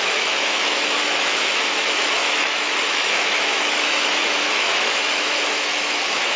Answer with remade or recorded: remade